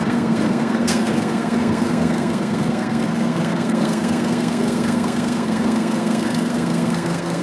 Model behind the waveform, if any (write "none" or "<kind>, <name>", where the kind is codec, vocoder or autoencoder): codec, SNAC